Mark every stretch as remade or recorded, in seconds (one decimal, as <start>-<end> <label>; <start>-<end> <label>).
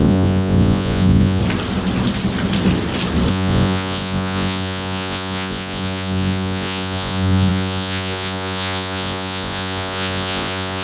0.0-1.4 remade; 1.4-3.3 recorded; 3.3-10.8 remade